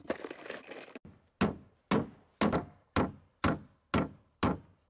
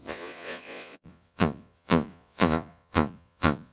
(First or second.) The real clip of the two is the first